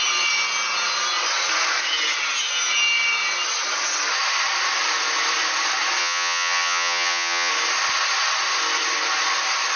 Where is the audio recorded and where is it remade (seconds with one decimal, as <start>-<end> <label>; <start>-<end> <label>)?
0.0-6.0 recorded; 6.0-7.5 remade; 7.5-9.8 recorded